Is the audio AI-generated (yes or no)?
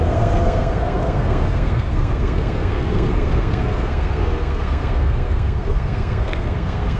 yes